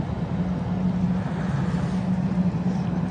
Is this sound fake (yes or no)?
no